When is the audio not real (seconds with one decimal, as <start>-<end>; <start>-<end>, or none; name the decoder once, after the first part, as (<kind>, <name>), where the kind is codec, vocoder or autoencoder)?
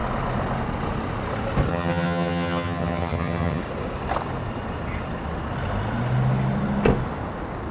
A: 1.7-3.6 (vocoder, HiFi-GAN)